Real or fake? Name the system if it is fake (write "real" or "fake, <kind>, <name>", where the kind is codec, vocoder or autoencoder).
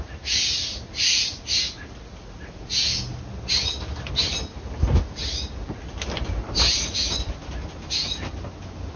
real